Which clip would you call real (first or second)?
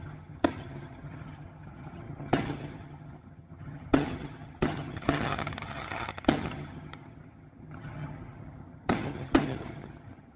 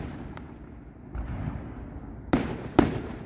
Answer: second